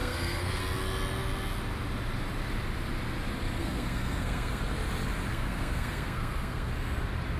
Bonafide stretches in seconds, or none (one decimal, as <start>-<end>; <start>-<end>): 0.6-3.6; 4.6-5.3; 6.7-7.4